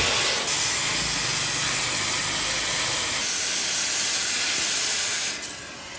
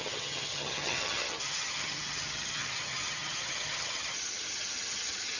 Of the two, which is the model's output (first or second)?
second